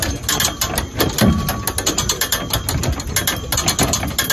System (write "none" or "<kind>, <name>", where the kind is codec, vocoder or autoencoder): none